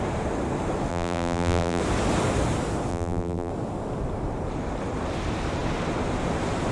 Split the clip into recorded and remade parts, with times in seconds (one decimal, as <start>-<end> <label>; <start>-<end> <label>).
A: 0.0-0.9 recorded; 0.9-1.8 remade; 1.8-2.9 recorded; 2.9-3.5 remade; 3.5-6.7 recorded